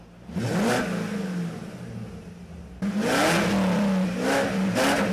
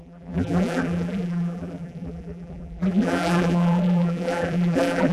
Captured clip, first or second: first